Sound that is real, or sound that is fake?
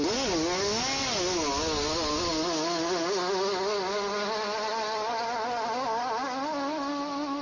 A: real